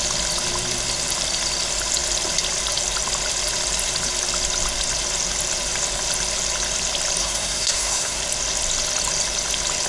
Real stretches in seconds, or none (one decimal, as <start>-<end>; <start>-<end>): 0.0-7.2; 8.2-9.9